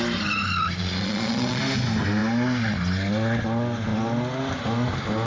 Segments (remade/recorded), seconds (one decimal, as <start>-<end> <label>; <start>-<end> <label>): 0.0-0.8 recorded; 0.8-1.6 remade; 1.6-5.3 recorded